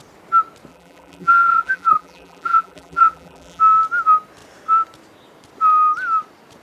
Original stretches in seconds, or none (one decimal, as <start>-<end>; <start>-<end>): 0.0-0.7; 3.6-6.6